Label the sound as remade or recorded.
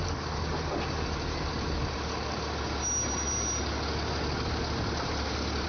recorded